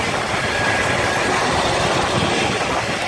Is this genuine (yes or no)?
yes